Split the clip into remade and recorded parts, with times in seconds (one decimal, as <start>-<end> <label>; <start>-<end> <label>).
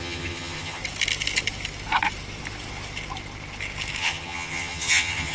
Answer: 0.0-0.8 remade; 0.8-4.0 recorded; 4.0-5.3 remade